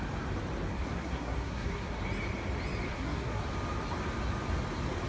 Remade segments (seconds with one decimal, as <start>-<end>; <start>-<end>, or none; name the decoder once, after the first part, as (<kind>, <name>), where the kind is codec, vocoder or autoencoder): 0.7-2.0 (codec, SNAC); 2.9-3.4